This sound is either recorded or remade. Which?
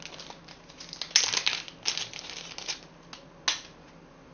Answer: recorded